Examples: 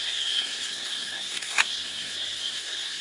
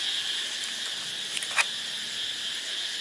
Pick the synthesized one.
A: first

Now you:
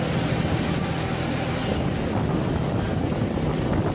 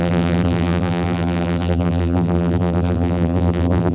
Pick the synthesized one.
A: second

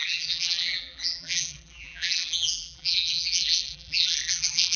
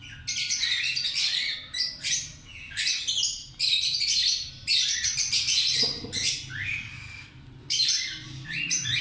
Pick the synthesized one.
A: first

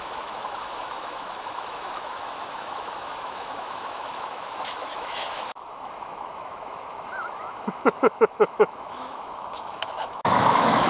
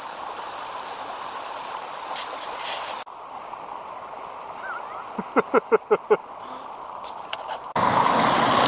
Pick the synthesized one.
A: first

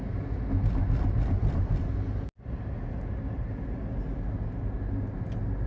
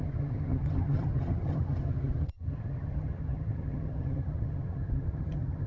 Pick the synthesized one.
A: second